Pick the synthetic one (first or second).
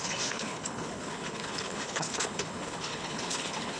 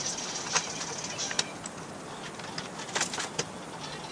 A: first